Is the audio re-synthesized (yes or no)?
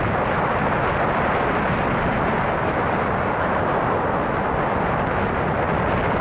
no